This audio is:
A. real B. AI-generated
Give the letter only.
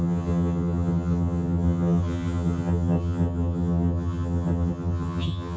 B